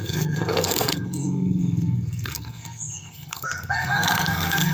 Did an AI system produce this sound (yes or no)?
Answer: yes